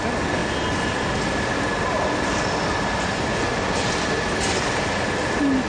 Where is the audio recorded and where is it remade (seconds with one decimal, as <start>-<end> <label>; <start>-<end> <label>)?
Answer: 0.0-5.7 recorded